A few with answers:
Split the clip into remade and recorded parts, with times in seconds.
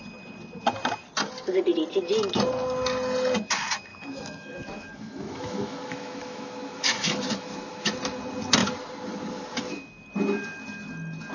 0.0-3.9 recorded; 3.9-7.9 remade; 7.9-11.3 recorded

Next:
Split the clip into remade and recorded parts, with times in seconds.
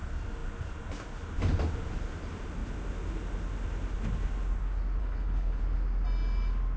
0.0-5.0 recorded; 5.0-5.6 remade; 5.6-6.8 recorded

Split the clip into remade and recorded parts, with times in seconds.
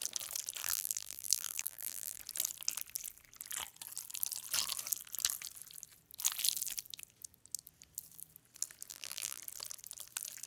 0.0-0.6 recorded; 0.6-2.2 remade; 2.2-8.9 recorded; 8.9-9.4 remade; 9.4-10.5 recorded